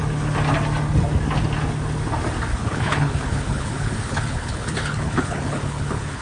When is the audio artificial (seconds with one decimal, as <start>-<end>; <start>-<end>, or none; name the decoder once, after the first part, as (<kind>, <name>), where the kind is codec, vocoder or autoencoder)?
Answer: 2.5-6.2 (codec, HILCodec)